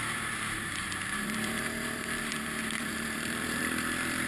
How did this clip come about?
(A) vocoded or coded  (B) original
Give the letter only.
A